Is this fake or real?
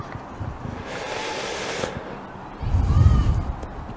real